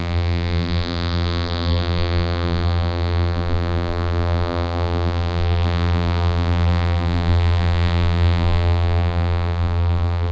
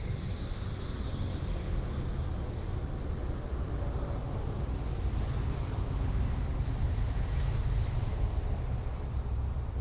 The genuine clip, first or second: second